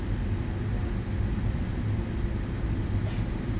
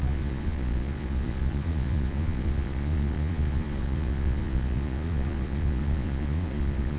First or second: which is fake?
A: second